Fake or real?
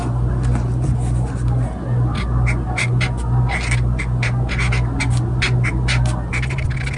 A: real